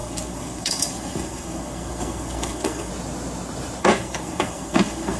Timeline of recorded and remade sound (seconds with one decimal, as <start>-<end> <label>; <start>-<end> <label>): 0.0-2.9 remade; 2.9-3.8 recorded; 3.8-5.2 remade